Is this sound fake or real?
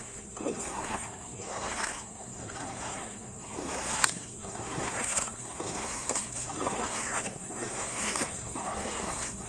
fake